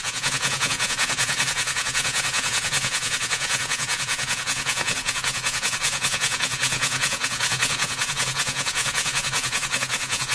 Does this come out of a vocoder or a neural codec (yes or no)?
yes